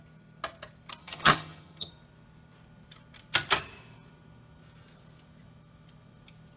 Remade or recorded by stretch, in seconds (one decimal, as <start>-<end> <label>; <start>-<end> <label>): 0.0-1.0 recorded; 1.0-1.9 remade; 1.9-6.6 recorded